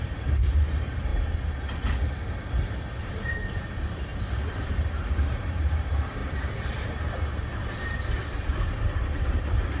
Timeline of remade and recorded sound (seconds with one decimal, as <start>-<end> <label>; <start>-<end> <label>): 0.0-1.1 remade; 1.1-3.0 recorded; 3.0-4.1 remade; 4.1-4.6 recorded; 4.6-9.8 remade